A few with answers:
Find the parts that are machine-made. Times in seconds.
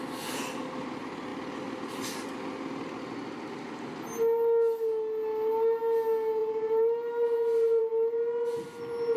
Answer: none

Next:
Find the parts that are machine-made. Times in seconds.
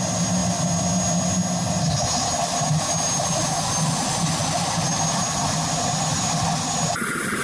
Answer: none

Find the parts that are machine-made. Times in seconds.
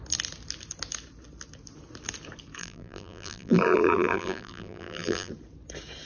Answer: 2.6-5.3 (vocoder, BigVGAN v2)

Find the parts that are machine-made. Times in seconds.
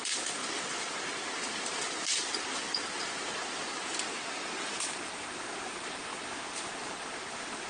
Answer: 0.4-4.0 (vocoder, BigVGAN v2); 6.1-7.1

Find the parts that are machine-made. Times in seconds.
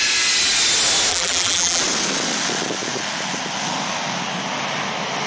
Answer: 1.1-1.8 (vocoder, BigVGAN v2)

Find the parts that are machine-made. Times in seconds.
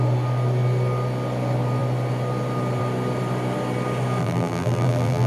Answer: 4.2-5.3 (vocoder, BigVGAN v2)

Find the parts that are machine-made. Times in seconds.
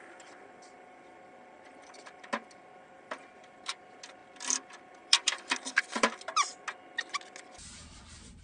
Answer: 1.7-2.3 (vocoder, BigVGAN v2); 4.2-6.2